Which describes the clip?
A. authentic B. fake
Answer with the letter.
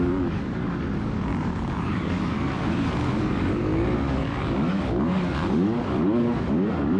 B